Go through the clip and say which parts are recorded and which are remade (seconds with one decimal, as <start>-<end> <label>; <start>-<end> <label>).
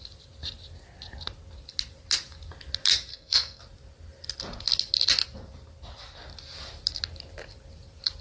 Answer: 0.0-3.1 recorded; 3.1-3.6 remade; 3.6-8.2 recorded